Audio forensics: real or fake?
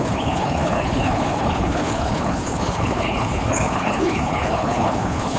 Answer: fake